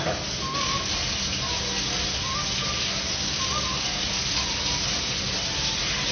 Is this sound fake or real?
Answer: real